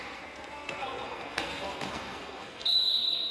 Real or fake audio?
fake